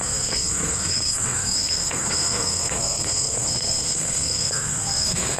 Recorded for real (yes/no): no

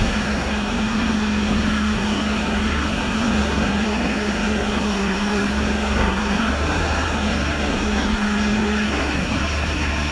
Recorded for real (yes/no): no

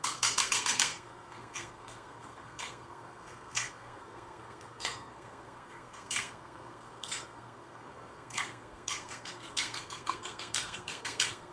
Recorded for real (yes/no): no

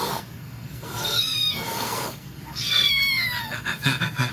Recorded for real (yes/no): no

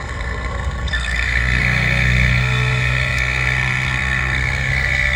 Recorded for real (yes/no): no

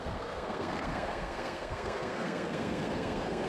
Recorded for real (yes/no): no